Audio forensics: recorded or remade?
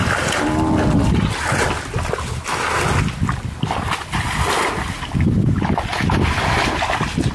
recorded